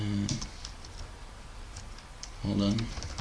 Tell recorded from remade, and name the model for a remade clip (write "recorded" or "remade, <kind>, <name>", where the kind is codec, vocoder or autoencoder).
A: remade, vocoder, BigVGAN v2